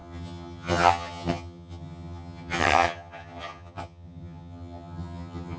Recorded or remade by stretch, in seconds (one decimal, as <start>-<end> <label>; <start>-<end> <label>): 0.0-5.6 remade